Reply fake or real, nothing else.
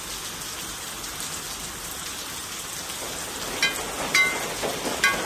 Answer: real